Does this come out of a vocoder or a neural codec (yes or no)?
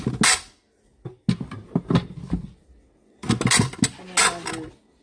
no